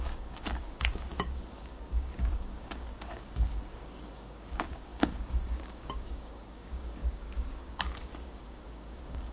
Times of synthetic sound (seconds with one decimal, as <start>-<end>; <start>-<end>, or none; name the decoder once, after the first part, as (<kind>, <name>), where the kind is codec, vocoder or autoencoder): 0.0-9.3 (codec, DAC)